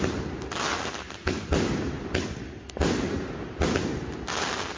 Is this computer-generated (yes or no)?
no